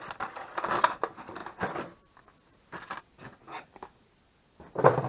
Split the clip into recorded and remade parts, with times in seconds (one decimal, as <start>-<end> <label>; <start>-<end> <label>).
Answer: 0.0-3.4 recorded; 3.4-4.0 remade; 4.0-5.1 recorded